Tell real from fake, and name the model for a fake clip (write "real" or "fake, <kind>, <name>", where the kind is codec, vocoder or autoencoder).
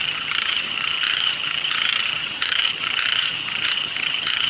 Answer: fake, vocoder, HiFi-GAN